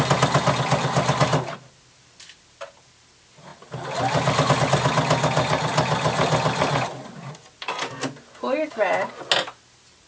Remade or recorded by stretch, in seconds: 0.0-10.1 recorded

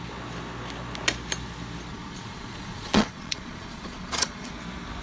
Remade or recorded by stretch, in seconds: 0.0-1.9 recorded; 1.9-4.5 remade; 4.5-5.0 recorded